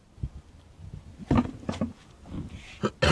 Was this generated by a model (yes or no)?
no